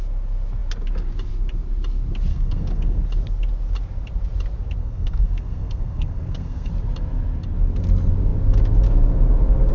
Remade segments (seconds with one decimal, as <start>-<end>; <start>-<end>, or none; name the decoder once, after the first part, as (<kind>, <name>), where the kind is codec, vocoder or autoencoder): 2.3-3.0 (codec, SNAC); 4.8-6.7